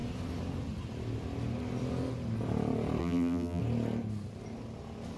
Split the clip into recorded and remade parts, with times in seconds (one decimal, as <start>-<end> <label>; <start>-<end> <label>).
0.0-3.0 recorded; 3.0-3.6 remade; 3.6-5.2 recorded